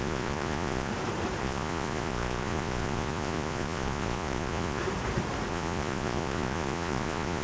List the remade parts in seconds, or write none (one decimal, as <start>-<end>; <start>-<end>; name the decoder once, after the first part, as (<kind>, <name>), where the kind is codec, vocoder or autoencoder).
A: 0.0-0.9 (vocoder, Vocos); 1.4-4.8; 5.5-7.4

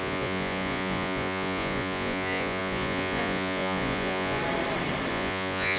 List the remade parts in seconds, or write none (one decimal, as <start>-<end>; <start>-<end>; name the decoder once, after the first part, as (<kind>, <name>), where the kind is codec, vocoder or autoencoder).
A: 0.0-4.4 (vocoder, Vocos); 5.1-5.8

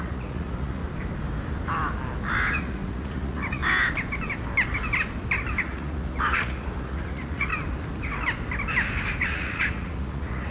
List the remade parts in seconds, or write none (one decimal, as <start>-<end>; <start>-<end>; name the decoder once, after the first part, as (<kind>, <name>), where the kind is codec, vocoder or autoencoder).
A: 0.0-0.8 (vocoder, Vocos); 2.5-3.6; 5.6-7.5; 9.2-10.5

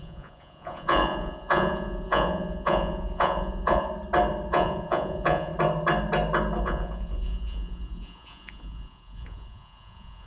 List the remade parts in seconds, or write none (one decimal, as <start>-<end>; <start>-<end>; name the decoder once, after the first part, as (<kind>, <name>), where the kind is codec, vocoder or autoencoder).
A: 0.0-3.9 (vocoder, Vocos); 4.5-5.5; 6.6-10.3